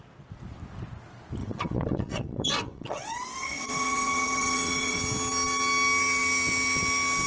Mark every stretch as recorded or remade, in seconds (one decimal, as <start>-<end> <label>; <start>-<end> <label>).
0.0-1.4 recorded; 1.4-5.0 remade; 5.0-7.3 recorded